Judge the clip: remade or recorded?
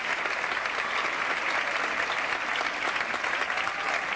recorded